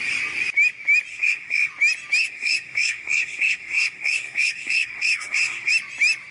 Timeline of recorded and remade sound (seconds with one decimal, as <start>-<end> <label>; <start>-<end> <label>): 0.0-1.1 recorded; 1.1-1.7 remade; 1.7-2.2 recorded; 2.2-5.7 remade; 5.7-6.3 recorded